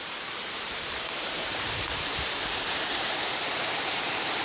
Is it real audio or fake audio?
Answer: fake